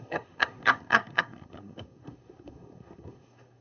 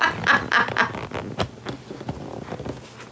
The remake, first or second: first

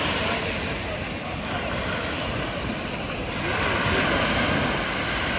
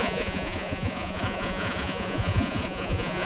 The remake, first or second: second